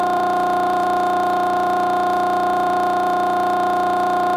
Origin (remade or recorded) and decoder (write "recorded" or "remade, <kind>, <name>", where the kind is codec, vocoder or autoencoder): remade, vocoder, BigVGAN v2